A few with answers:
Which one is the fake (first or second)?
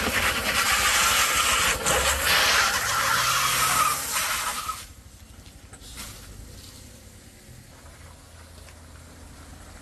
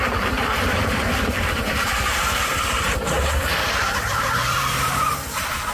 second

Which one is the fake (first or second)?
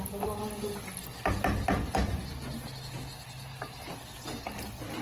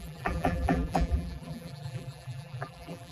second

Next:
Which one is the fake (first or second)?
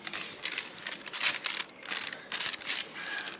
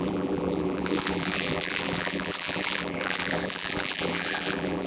second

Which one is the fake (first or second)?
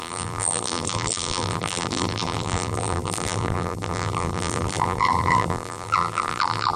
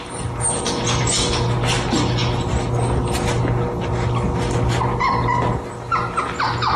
first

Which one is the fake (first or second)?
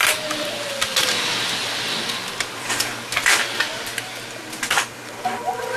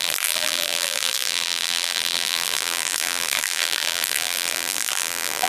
second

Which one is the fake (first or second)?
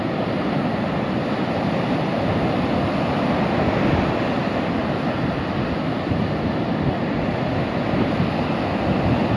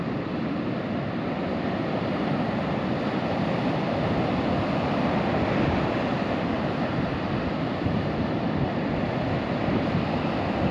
second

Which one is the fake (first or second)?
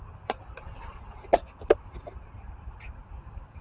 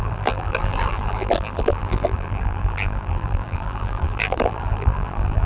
second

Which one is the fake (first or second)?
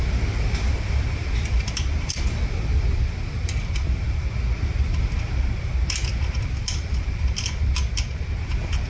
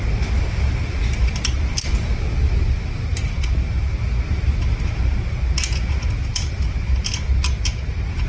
first